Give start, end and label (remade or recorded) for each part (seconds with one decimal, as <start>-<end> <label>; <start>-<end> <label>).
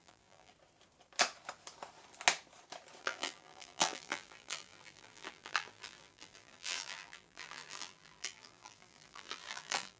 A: 0.0-0.5 remade; 0.5-3.0 recorded; 3.0-10.0 remade